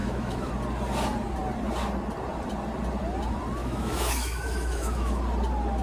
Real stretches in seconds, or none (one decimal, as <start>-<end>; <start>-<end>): 0.5-3.6; 5.2-5.8